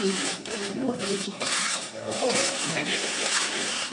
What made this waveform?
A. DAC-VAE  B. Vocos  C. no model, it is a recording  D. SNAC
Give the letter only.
D